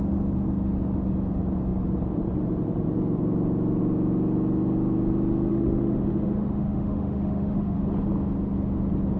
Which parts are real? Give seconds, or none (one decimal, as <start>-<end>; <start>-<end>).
0.0-5.5; 7.8-9.2